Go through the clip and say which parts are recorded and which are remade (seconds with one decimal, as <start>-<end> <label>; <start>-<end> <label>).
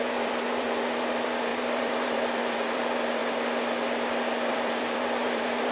0.0-3.2 remade; 3.2-4.5 recorded; 4.5-5.7 remade